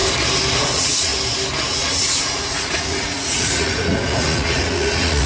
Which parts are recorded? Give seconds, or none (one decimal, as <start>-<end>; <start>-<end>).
0.0-0.6; 1.1-1.7